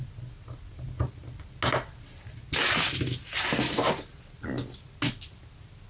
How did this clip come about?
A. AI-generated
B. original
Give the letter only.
B